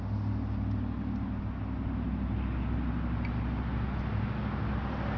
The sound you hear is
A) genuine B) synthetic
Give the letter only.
A